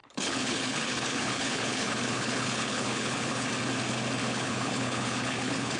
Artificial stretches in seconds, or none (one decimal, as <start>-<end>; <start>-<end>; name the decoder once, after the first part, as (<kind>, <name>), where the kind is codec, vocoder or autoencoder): 0.0-3.5 (codec, HILCodec); 4.2-5.8